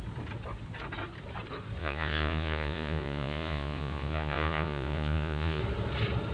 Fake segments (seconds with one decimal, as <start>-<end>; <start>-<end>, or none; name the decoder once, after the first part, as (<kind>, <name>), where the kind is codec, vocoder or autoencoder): 1.8-5.6 (vocoder, Vocos)